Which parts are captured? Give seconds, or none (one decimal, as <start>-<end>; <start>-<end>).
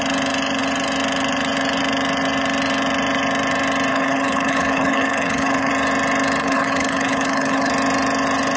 0.0-3.9; 5.7-6.4; 7.7-8.6